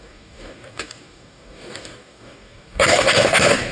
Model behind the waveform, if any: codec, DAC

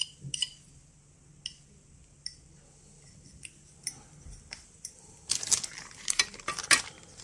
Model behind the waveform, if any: none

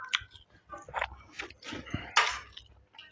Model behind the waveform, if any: none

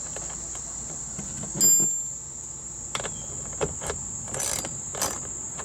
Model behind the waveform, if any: none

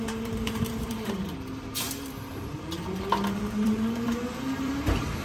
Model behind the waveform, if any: vocoder, BigVGAN v2